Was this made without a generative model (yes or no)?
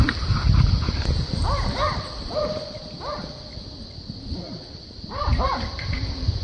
yes